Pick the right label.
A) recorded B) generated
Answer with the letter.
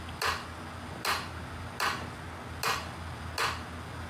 A